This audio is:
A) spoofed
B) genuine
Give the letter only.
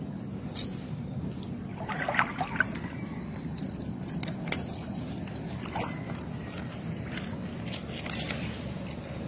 B